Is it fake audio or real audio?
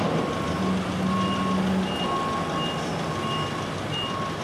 real